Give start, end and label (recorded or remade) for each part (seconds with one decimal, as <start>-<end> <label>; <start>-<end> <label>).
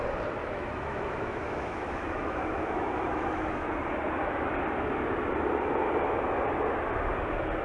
0.0-0.4 recorded; 0.4-3.7 remade; 3.7-7.6 recorded